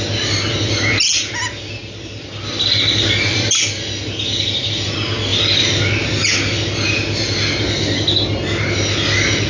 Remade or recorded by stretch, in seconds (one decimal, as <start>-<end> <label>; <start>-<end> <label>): 0.0-9.5 recorded